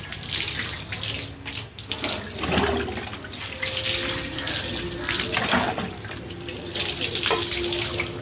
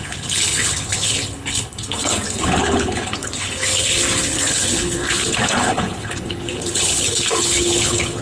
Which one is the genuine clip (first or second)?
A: first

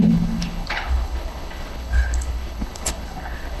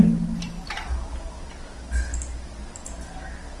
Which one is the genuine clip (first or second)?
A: second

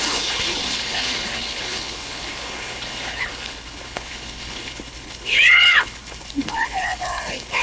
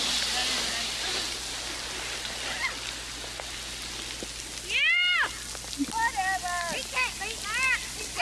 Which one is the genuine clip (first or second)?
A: second